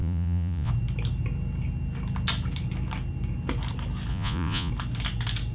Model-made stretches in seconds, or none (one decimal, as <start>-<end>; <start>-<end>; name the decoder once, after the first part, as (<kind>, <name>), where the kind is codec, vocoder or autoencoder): 0.0-0.7 (vocoder, Vocos); 4.1-4.7